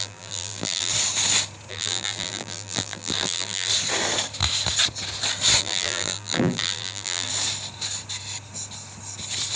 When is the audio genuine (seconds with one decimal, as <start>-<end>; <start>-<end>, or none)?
0.9-1.7; 3.7-5.6; 7.3-9.6